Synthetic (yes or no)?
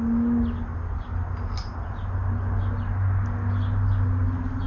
no